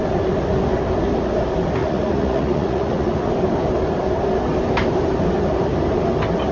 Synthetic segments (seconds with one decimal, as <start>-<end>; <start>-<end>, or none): 1.8-3.3

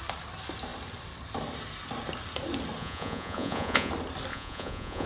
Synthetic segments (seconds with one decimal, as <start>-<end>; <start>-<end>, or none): 2.8-3.9; 4.3-5.1

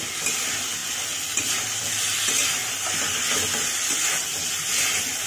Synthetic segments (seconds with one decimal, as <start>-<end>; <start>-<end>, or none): none

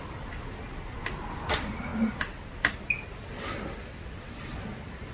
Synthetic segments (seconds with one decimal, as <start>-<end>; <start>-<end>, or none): none

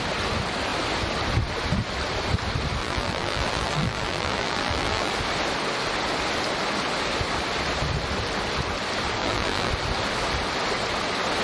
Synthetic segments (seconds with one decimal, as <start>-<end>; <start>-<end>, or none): 2.8-5.1; 9.2-9.7